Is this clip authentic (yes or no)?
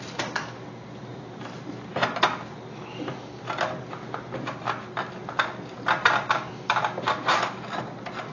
yes